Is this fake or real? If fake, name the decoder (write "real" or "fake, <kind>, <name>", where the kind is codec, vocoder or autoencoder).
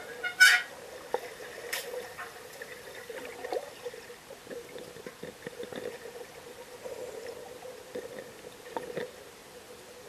real